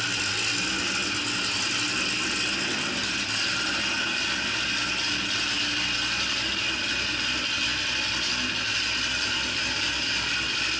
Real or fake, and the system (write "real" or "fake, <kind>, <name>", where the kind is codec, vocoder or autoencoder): real